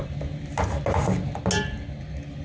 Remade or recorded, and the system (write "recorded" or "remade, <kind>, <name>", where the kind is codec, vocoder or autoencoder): recorded